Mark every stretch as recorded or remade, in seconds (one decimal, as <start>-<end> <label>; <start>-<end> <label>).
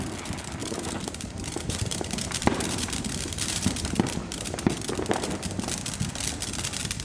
0.0-0.6 recorded; 0.6-4.8 remade; 4.8-7.0 recorded